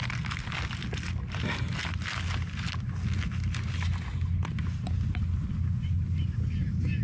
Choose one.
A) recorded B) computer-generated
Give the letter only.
A